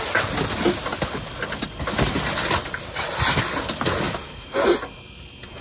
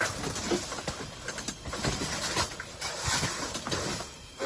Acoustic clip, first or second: first